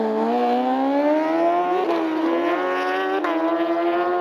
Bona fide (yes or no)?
yes